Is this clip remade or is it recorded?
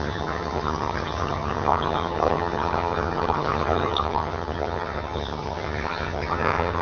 remade